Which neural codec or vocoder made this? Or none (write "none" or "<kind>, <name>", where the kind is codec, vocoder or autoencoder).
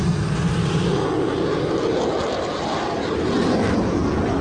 none